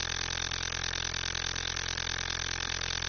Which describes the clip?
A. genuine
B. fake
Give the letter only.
A